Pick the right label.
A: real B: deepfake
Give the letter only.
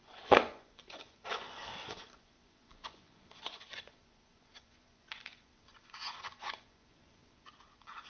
B